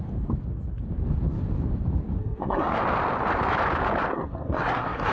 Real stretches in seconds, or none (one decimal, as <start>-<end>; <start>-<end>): 0.0-2.2; 2.8-4.1